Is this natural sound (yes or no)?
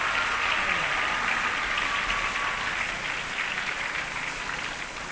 yes